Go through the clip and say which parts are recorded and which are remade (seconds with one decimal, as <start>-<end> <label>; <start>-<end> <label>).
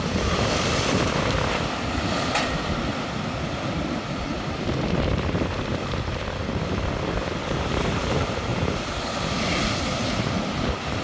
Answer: 0.0-8.5 remade; 8.5-9.8 recorded; 9.8-11.0 remade